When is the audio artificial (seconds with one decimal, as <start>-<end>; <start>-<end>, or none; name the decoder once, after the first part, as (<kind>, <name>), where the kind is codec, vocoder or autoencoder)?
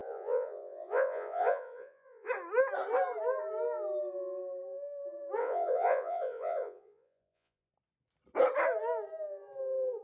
0.0-2.3 (vocoder, Vocos); 5.4-7.7